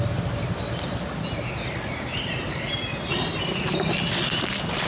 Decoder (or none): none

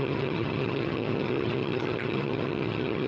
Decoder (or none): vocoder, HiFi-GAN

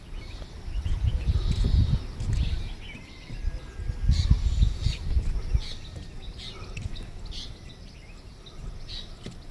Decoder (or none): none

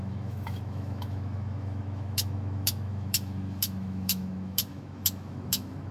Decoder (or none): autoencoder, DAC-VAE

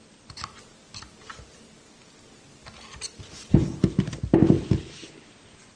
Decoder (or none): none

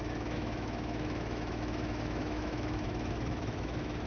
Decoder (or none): autoencoder, DAC-VAE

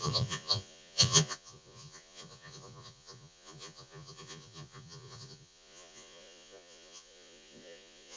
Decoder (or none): vocoder, Vocos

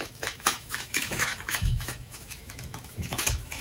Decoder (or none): autoencoder, DAC-VAE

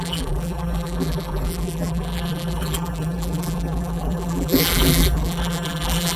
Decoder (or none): vocoder, BigVGAN v2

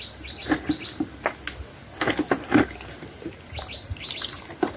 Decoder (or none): none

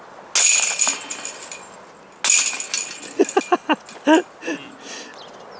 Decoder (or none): none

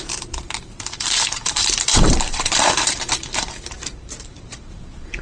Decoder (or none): vocoder, BigVGAN v2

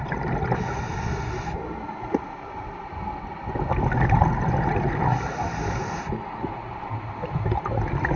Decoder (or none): none